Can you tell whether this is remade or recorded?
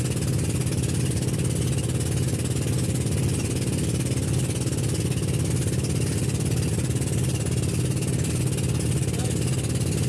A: recorded